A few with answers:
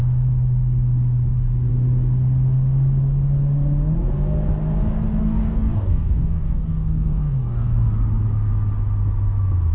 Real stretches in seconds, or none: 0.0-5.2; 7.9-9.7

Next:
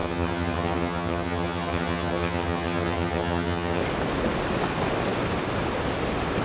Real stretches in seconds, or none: 3.8-6.4

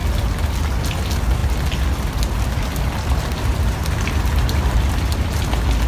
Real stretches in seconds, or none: 0.0-5.9

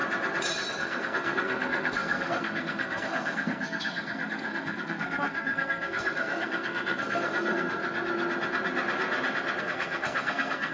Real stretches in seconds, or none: 0.0-0.7; 7.8-9.6

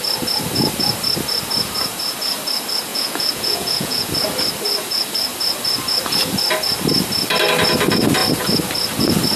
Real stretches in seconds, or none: 0.0-2.9; 4.1-9.4

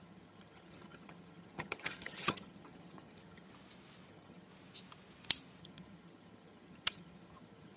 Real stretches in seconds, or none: 3.5-4.1; 4.5-5.6

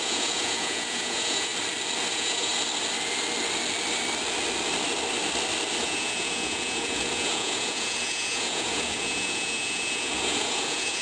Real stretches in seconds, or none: 1.5-2.1; 2.5-5.8

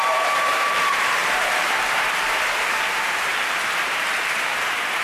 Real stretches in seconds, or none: none